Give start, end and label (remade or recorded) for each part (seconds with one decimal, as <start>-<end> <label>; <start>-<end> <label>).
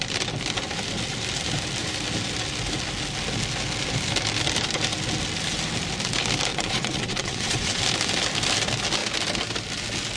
0.0-6.5 recorded; 6.5-7.8 remade; 7.8-10.2 recorded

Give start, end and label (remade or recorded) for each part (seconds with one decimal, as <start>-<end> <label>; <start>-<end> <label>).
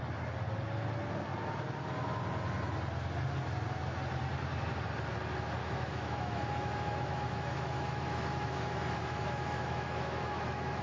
0.0-5.6 recorded; 5.6-10.8 remade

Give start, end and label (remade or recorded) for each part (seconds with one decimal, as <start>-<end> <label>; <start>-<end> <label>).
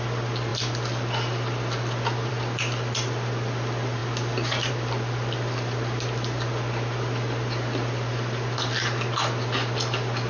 0.0-10.3 recorded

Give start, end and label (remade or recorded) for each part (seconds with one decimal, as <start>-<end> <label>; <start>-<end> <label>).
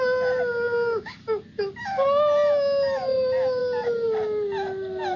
0.0-5.2 recorded